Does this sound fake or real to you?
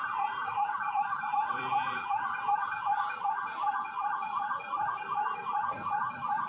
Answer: fake